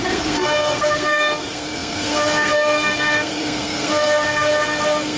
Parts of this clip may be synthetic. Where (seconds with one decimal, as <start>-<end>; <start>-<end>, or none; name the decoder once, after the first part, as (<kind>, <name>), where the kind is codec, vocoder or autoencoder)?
0.0-5.2 (codec, SNAC)